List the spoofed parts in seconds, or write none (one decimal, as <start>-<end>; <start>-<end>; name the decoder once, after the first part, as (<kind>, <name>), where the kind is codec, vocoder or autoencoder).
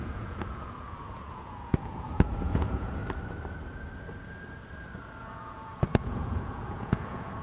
0.0-3.0 (vocoder, Vocos); 5.2-7.4